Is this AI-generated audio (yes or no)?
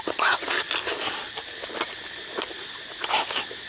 no